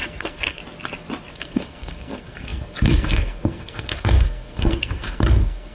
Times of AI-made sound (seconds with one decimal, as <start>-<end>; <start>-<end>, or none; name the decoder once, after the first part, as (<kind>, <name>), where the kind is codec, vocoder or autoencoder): 0.0-0.6 (codec, SNAC); 1.3-5.7